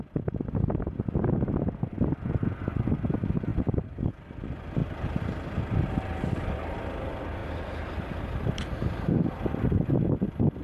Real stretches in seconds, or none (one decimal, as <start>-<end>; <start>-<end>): 0.0-3.5; 4.1-7.4; 8.1-10.6

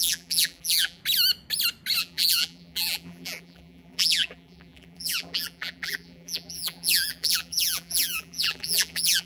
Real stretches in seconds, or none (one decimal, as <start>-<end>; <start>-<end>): 1.0-2.0

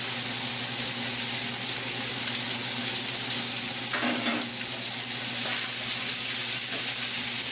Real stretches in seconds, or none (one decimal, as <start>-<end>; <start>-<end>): 0.0-7.5

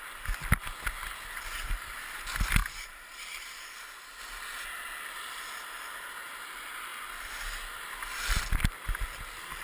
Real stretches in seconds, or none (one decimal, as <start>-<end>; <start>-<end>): 0.0-2.6; 4.2-9.6

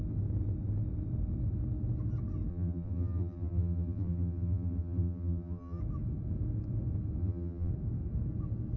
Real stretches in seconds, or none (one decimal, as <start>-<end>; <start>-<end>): 0.0-2.5; 5.8-7.2; 7.7-8.8